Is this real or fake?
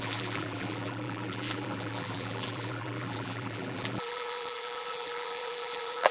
fake